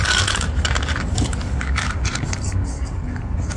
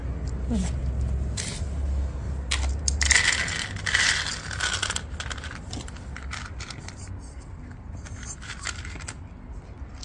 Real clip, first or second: second